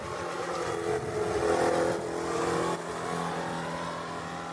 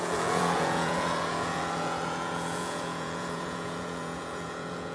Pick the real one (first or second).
first